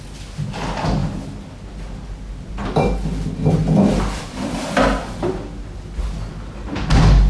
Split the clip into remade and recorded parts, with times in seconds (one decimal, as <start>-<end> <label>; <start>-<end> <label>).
0.0-3.6 recorded; 3.6-4.4 remade; 4.4-7.3 recorded